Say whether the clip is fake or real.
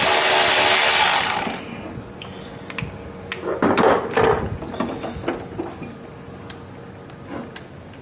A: real